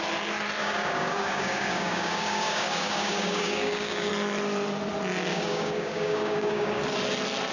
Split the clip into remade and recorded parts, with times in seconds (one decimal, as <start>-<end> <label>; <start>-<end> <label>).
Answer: 0.0-0.6 recorded; 0.6-4.1 remade; 4.1-5.3 recorded; 5.3-6.8 remade; 6.8-7.5 recorded